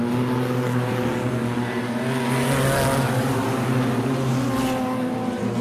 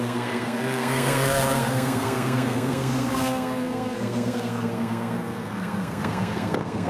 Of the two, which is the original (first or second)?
first